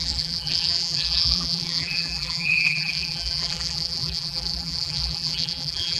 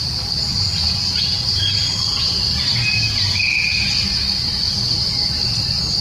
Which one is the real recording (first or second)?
second